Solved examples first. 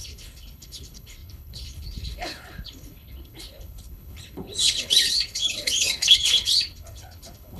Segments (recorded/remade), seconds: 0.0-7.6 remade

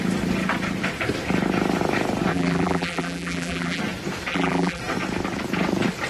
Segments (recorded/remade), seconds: 0.0-2.3 recorded; 2.3-3.8 remade; 3.8-4.3 recorded; 4.3-4.8 remade; 4.8-6.1 recorded

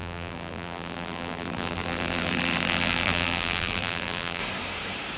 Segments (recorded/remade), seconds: 0.0-4.4 remade; 4.4-5.2 recorded

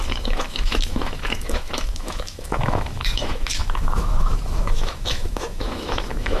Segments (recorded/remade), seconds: 0.0-6.4 remade

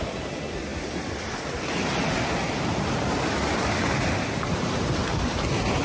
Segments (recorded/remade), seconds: 0.0-0.7 recorded; 0.7-4.2 remade; 4.2-5.8 recorded